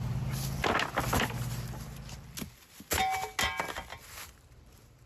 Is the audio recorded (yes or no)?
yes